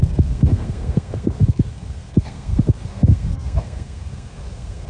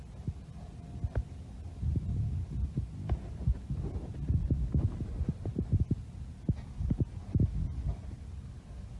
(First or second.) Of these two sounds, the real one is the second